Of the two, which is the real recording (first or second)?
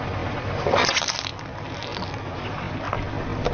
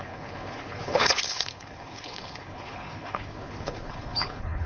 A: first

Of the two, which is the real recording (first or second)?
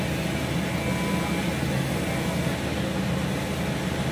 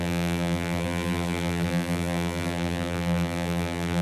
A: first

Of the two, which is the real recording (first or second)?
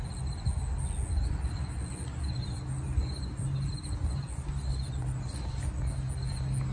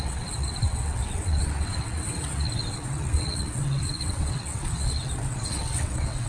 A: first